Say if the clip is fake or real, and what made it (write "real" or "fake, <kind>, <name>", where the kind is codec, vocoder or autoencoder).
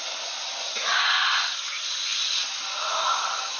real